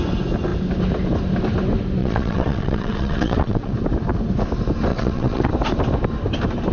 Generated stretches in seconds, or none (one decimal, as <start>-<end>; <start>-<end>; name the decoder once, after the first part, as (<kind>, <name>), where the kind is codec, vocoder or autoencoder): 2.0-3.7 (vocoder, WaveNeXt); 4.9-5.5